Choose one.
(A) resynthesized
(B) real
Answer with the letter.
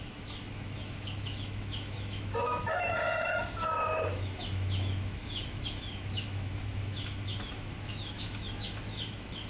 A